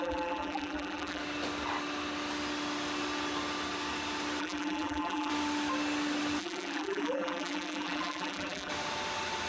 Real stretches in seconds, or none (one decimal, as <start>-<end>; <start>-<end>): 1.2-4.4; 5.3-6.4; 8.7-9.5